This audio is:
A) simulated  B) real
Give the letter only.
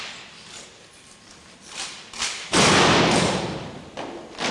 B